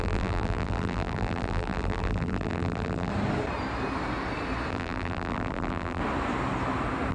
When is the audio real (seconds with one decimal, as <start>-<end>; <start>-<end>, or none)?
3.1-4.7; 6.0-7.1

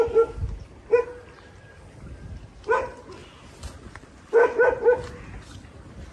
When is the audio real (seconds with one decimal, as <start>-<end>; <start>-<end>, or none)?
0.0-6.1